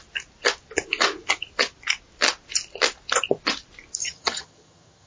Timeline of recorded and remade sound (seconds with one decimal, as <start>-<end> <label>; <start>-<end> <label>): 0.0-4.0 recorded; 4.0-5.1 remade